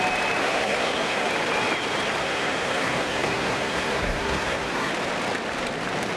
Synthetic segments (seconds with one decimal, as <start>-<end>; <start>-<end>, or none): 0.4-1.3; 2.2-4.9